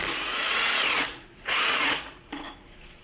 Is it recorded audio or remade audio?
remade